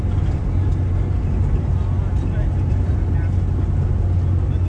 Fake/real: real